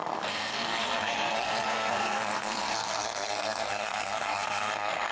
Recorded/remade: remade